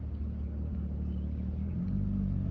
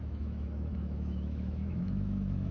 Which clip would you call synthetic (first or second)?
second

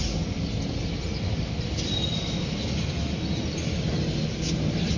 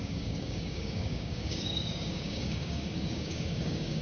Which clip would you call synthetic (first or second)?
second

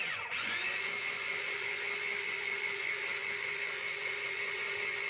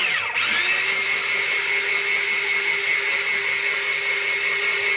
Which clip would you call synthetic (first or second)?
first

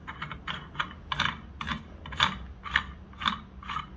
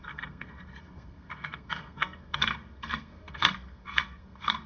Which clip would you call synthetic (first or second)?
second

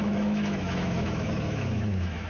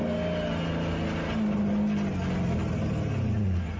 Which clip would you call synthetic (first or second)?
first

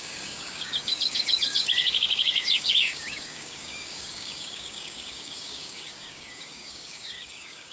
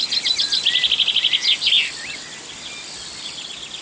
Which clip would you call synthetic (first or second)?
first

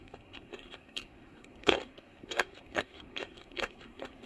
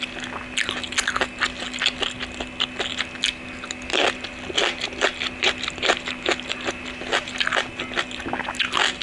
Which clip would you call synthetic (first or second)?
first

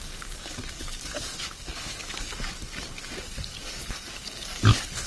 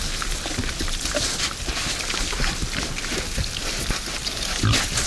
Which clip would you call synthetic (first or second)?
first